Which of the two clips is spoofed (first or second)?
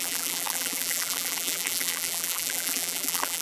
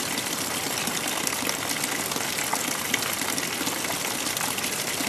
first